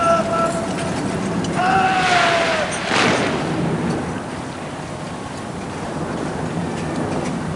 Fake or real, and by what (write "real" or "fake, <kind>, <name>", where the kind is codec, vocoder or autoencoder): real